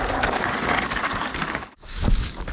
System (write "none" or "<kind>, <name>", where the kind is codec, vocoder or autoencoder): codec, DAC